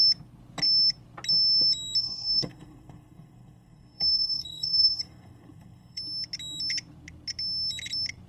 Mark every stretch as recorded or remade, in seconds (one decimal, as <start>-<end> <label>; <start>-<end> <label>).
0.0-2.0 recorded; 2.0-6.0 remade; 6.0-8.3 recorded